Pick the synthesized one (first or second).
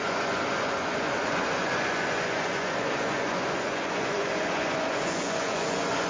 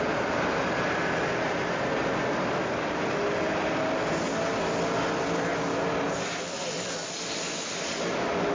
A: first